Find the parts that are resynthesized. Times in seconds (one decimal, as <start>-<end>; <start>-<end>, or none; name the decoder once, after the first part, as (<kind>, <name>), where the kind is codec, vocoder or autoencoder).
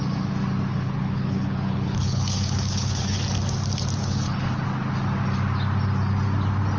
0.7-3.2 (codec, HILCodec); 4.0-4.5